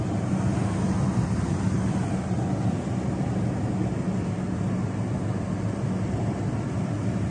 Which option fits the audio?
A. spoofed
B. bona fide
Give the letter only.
B